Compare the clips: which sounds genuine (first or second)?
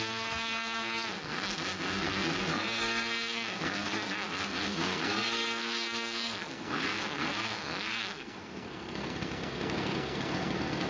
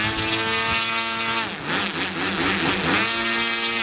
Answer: second